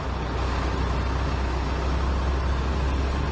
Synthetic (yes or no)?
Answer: no